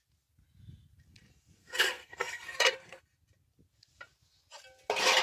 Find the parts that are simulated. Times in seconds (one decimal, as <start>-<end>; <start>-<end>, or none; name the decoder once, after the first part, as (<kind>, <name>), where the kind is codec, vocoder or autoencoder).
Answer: 1.6-3.0 (codec, SNAC)